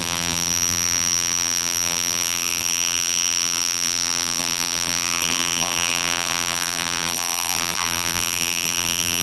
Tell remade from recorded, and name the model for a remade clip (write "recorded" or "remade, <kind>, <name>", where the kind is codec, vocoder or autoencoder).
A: remade, vocoder, BigVGAN v2